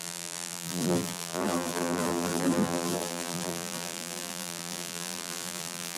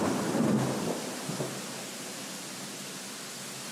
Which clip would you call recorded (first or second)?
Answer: second